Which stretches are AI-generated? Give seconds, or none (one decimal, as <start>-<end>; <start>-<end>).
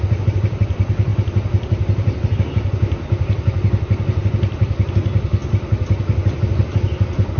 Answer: none